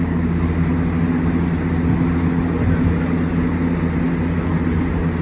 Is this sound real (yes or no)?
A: yes